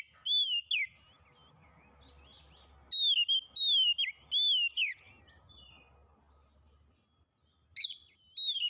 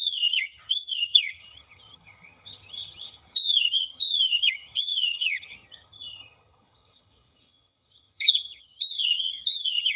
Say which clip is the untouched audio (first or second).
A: first